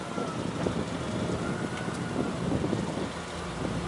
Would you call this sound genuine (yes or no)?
yes